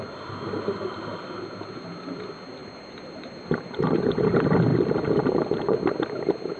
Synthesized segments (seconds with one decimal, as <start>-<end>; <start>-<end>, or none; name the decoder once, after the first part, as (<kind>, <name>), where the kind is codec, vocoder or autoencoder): 2.6-4.0 (vocoder, BigVGAN v2)